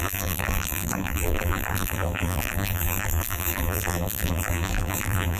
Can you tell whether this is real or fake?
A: fake